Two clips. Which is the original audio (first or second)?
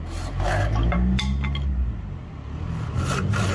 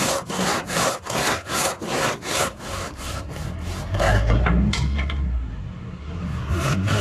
first